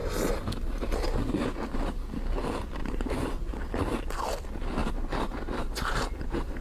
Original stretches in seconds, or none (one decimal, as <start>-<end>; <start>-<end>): 0.0-2.8; 3.8-4.8